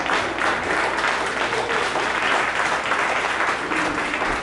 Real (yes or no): yes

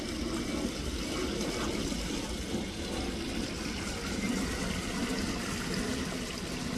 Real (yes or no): yes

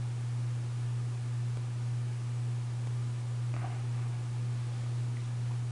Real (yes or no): yes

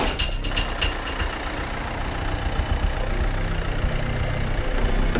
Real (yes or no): yes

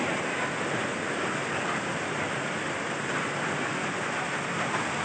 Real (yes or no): yes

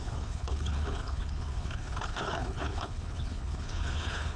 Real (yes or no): no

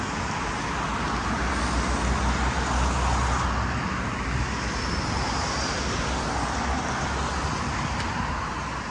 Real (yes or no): yes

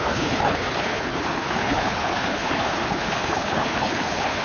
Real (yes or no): no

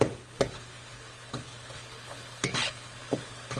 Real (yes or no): no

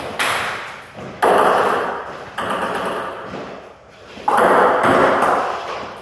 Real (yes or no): yes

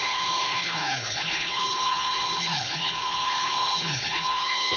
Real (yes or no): no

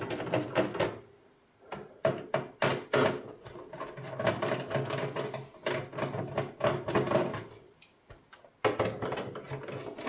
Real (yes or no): yes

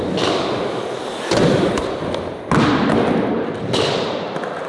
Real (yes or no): yes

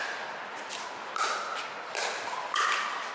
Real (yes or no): yes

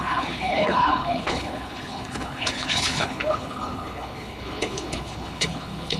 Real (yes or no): no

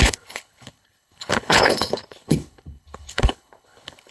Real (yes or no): no